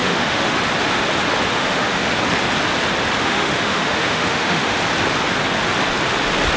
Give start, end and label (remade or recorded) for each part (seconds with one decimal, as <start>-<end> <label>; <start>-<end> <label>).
0.0-0.6 remade; 0.6-1.5 recorded; 1.5-2.1 remade; 2.1-3.2 recorded; 3.2-4.8 remade; 4.8-6.6 recorded